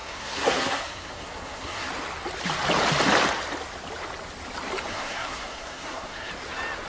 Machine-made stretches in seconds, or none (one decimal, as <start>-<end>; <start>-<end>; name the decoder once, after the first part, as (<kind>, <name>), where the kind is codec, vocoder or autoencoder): 0.0-1.9 (codec, SNAC); 4.9-6.3

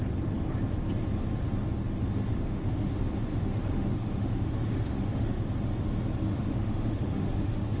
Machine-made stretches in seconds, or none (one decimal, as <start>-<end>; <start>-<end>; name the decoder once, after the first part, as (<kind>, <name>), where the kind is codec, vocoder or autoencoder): 2.3-2.9 (autoencoder, DAC-VAE); 3.3-5.5; 6.3-7.8

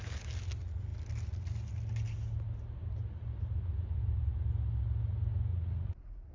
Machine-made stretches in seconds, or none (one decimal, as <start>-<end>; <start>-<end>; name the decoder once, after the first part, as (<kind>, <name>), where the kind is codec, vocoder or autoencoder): 5.5-6.3 (vocoder, Vocos)

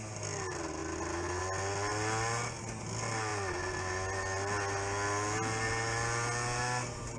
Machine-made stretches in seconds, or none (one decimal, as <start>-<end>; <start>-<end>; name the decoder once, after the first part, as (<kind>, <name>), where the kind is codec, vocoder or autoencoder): none